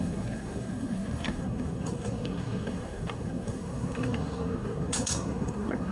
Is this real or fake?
fake